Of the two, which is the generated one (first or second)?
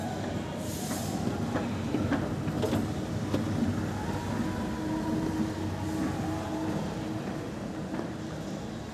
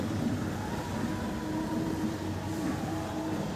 second